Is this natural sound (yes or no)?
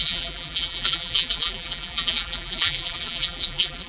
no